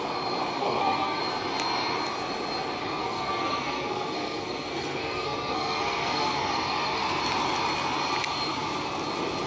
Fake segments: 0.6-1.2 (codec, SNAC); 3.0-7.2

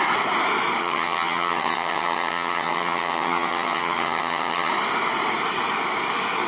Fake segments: 0.8-4.7 (vocoder, HiFi-GAN)

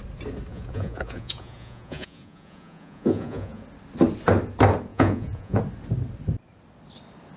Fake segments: 0.5-3.6 (vocoder, Vocos); 4.9-5.6